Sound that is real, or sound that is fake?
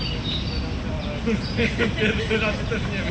real